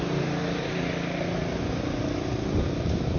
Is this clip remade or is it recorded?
recorded